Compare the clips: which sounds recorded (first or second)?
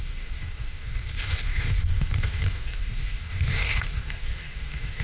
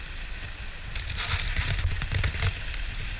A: second